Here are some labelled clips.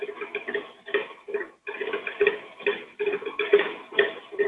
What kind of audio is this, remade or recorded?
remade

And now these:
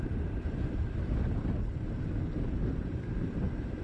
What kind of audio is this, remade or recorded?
recorded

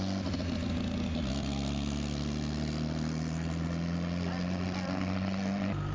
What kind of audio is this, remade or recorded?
recorded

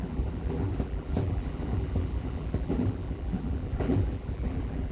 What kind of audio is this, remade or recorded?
remade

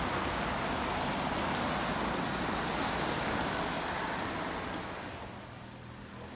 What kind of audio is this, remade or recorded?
recorded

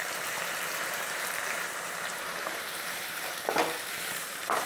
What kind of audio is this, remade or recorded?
remade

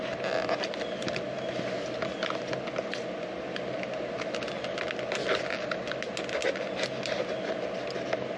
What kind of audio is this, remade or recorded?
recorded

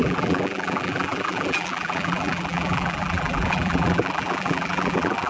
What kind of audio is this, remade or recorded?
remade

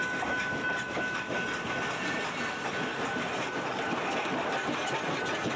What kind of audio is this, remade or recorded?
recorded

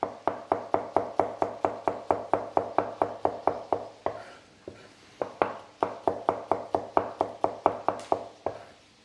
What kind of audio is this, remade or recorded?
recorded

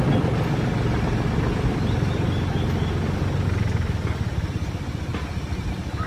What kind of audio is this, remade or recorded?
recorded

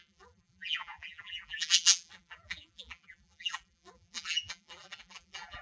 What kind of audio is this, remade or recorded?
remade